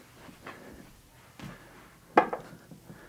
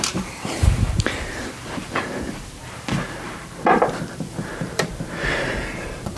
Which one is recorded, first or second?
first